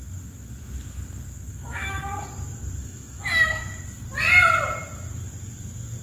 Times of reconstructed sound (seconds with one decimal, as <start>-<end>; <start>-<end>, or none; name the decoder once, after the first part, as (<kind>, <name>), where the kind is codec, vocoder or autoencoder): 1.5-2.0 (autoencoder, DAC-VAE); 2.8-3.6